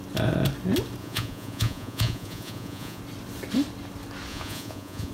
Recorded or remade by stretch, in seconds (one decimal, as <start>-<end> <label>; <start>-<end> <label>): 0.0-1.0 recorded; 1.0-3.0 remade; 3.0-4.3 recorded; 4.3-5.1 remade